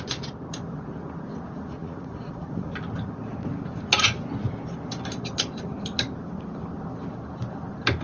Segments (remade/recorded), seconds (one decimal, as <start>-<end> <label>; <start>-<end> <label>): 0.0-1.8 recorded; 1.8-2.7 remade; 2.7-8.0 recorded